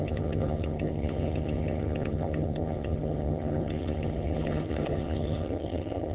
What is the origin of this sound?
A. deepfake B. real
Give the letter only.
A